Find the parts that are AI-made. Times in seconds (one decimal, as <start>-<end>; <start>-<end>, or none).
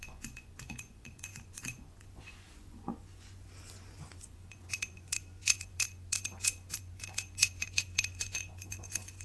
0.0-9.2